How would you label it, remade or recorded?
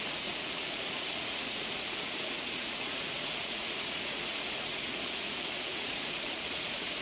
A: remade